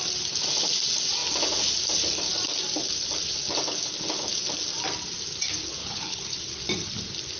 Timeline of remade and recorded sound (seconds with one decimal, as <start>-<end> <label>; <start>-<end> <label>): 0.0-5.8 recorded; 5.8-6.6 remade; 6.6-7.4 recorded

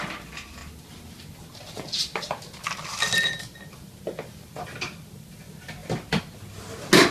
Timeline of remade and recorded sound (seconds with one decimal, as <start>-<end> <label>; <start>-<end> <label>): 0.0-7.1 recorded

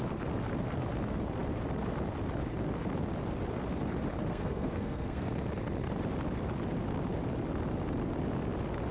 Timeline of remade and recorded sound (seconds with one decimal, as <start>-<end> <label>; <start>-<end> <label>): 0.0-4.2 recorded; 4.2-5.3 remade; 5.3-8.9 recorded

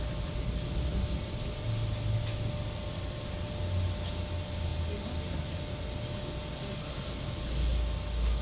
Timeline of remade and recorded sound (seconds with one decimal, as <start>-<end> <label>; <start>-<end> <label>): 0.0-8.4 recorded